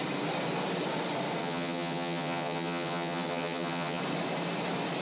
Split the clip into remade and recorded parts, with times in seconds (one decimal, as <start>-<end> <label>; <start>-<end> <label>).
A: 0.0-1.4 recorded; 1.4-4.0 remade; 4.0-5.0 recorded